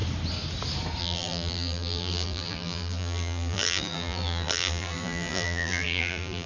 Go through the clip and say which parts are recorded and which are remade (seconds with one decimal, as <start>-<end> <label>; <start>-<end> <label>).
0.0-1.0 recorded; 1.0-6.5 remade

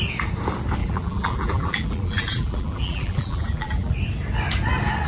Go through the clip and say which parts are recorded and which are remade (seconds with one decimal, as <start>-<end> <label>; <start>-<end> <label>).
0.0-0.8 recorded; 0.8-3.9 remade; 3.9-5.1 recorded

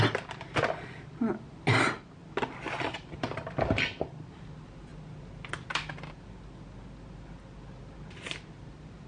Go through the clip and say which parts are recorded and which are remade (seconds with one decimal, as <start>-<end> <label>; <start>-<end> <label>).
0.0-9.1 recorded